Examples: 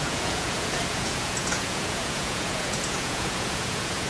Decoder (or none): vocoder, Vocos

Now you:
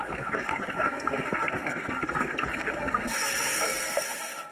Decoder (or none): codec, SNAC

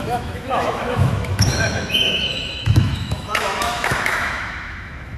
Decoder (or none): autoencoder, DAC-VAE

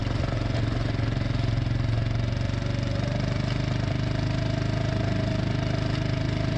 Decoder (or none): none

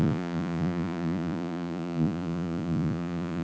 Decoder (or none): vocoder, Vocos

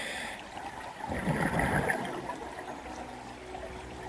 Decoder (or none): vocoder, BigVGAN v2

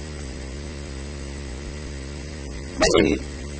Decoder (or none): vocoder, Vocos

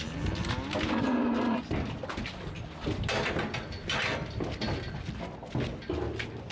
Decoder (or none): none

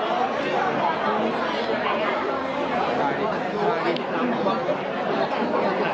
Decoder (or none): none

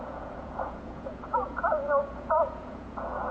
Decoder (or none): vocoder, Vocos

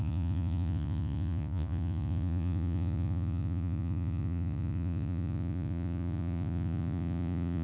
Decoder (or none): vocoder, Vocos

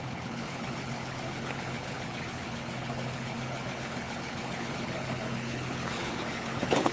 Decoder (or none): codec, HILCodec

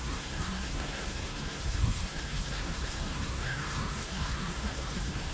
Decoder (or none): codec, SNAC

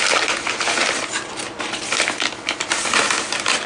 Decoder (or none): none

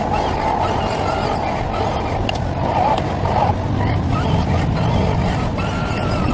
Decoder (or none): none